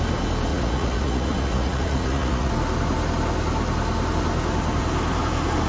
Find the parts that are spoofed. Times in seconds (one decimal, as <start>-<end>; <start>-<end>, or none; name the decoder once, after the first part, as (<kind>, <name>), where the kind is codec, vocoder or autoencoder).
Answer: 0.5-2.5 (vocoder, Vocos)